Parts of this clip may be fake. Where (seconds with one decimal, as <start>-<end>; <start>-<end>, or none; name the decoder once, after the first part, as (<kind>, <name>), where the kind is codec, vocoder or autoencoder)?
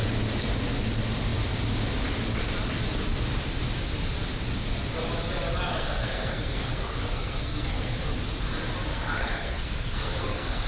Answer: 5.7-8.0 (codec, SNAC); 8.9-10.7